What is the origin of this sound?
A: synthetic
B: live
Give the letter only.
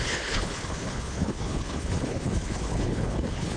A